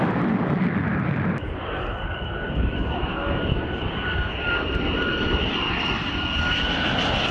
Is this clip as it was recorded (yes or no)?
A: no